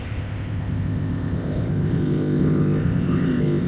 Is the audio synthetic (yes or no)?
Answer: yes